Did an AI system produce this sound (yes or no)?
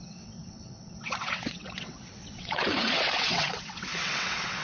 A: yes